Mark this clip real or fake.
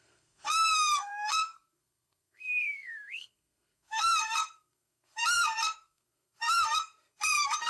fake